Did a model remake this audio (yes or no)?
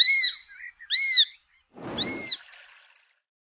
no